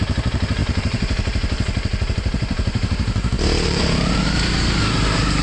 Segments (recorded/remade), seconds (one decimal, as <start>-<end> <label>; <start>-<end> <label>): 0.0-0.6 recorded; 0.6-3.8 remade; 3.8-5.4 recorded

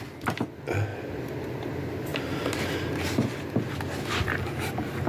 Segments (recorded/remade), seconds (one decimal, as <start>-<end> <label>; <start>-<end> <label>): 0.0-5.1 recorded

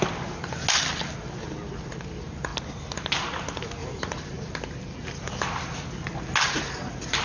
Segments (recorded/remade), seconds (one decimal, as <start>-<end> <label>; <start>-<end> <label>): 0.0-3.8 recorded; 3.8-4.4 remade; 4.4-7.2 recorded

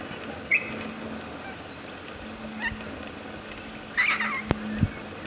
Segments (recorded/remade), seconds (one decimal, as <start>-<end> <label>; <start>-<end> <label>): 0.0-5.3 recorded

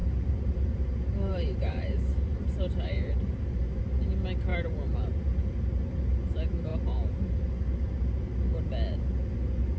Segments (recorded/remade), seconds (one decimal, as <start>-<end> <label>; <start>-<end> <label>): 0.0-3.8 remade; 3.8-9.8 recorded

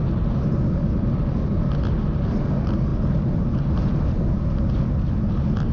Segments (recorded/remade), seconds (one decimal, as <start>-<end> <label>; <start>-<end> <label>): 0.0-5.7 recorded

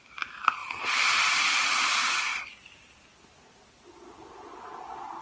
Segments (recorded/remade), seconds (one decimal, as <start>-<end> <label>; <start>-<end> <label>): 0.0-2.3 remade; 2.3-5.2 recorded

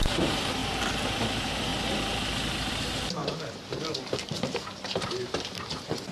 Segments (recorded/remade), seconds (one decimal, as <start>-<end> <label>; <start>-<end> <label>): 0.0-0.6 remade; 0.6-1.2 recorded; 1.2-1.7 remade; 1.7-2.7 recorded; 2.7-3.2 remade; 3.2-4.0 recorded; 4.0-6.1 remade